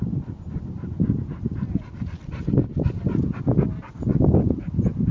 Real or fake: real